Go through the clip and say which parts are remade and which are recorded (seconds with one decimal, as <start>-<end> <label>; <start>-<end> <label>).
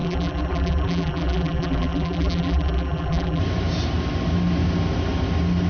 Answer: 0.0-3.4 remade; 3.4-5.7 recorded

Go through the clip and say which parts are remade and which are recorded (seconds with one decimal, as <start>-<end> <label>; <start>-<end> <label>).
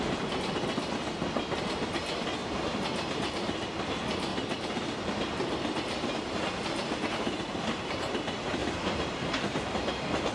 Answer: 0.0-2.4 recorded; 2.4-3.7 remade; 3.7-4.3 recorded; 4.3-7.1 remade; 7.1-8.6 recorded; 8.6-10.3 remade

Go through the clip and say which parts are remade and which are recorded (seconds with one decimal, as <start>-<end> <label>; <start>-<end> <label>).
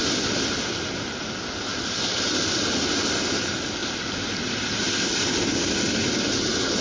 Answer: 0.0-1.7 recorded; 1.7-2.6 remade; 2.6-6.8 recorded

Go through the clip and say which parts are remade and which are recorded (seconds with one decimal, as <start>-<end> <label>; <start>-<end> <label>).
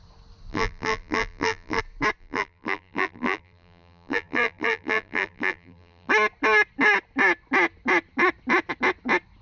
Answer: 0.0-0.5 recorded; 0.5-1.8 remade; 1.8-2.2 recorded; 2.2-6.1 remade; 6.1-9.4 recorded